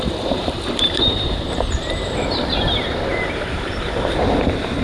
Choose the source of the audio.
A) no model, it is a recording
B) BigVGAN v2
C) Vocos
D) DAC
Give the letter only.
B